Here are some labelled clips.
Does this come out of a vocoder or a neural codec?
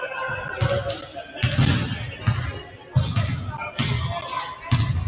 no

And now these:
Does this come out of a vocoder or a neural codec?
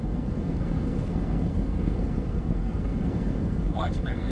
yes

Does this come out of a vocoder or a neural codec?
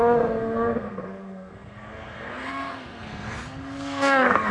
yes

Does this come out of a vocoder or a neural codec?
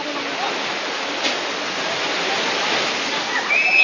no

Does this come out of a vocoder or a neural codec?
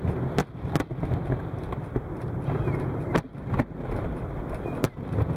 no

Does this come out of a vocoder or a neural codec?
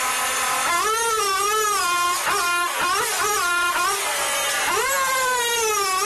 no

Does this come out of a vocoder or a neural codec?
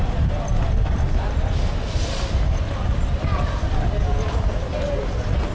no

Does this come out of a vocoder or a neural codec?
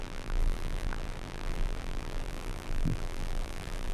yes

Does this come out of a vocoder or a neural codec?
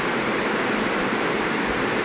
no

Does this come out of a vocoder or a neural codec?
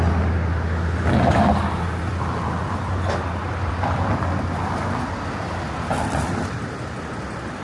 no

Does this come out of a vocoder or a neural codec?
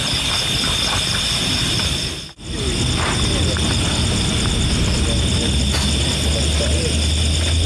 no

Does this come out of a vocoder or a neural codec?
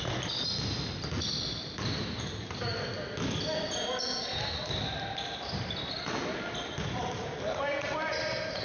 no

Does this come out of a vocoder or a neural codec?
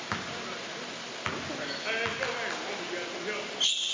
no